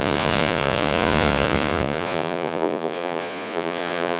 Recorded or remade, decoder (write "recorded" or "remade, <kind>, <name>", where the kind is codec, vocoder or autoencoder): remade, vocoder, Vocos